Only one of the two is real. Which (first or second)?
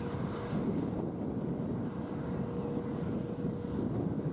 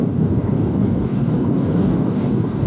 first